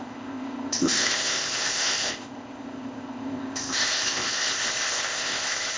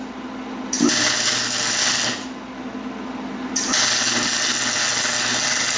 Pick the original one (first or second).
second